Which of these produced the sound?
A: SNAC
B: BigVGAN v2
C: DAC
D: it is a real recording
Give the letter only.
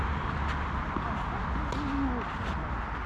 D